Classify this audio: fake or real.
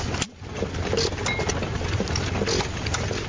real